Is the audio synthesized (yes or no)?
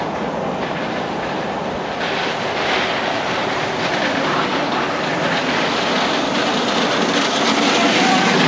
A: no